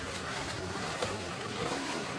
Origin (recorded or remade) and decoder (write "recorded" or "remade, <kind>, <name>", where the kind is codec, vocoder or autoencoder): remade, codec, SNAC